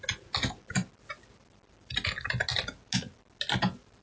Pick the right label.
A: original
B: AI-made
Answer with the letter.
A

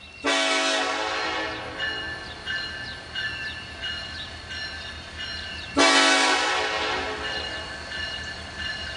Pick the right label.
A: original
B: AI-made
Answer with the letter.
A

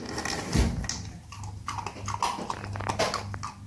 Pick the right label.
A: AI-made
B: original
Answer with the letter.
B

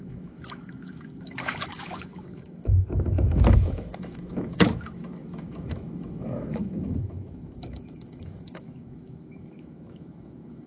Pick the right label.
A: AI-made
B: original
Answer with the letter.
A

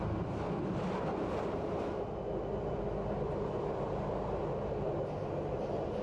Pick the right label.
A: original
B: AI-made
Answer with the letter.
A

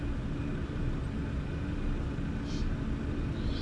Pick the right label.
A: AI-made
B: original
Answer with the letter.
B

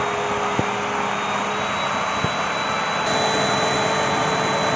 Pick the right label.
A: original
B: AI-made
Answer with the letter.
A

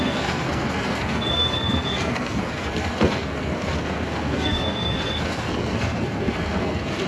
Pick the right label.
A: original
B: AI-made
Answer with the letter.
B